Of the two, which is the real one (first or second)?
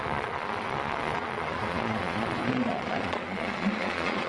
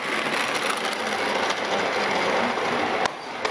second